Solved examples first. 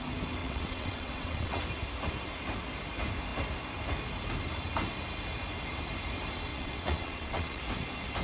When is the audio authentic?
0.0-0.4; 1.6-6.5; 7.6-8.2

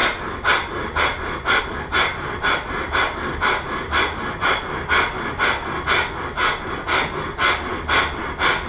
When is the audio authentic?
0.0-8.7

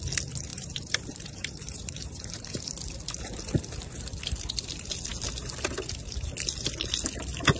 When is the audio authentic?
0.0-0.5; 2.5-7.6